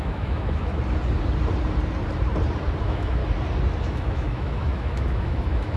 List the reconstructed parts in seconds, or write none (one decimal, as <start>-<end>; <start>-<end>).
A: 0.0-0.7; 2.8-3.2; 3.8-5.8